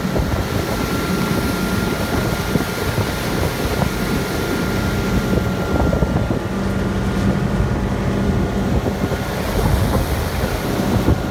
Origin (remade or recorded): recorded